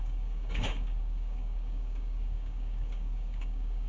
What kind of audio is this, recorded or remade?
remade